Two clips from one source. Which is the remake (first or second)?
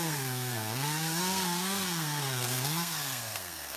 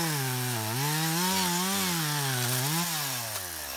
first